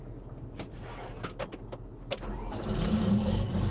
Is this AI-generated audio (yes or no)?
no